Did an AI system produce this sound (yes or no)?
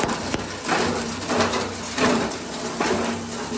no